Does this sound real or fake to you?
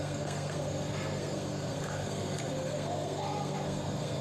fake